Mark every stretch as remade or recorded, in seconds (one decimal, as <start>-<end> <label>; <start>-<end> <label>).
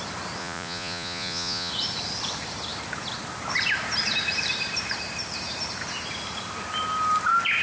0.0-0.4 recorded; 0.4-1.7 remade; 1.7-7.6 recorded